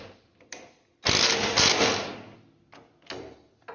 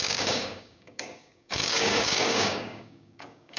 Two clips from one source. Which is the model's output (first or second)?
second